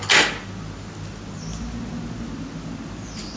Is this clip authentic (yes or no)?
yes